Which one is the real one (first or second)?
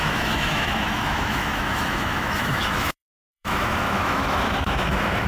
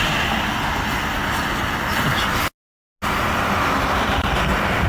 second